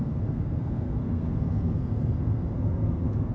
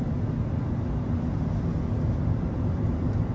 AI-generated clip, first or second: first